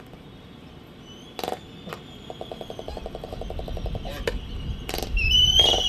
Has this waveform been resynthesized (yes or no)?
no